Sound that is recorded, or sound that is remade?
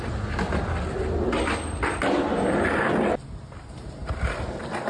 recorded